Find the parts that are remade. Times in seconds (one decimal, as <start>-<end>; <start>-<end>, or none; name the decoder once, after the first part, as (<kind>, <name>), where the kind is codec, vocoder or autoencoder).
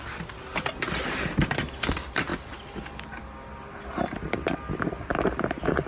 none